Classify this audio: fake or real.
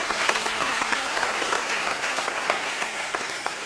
fake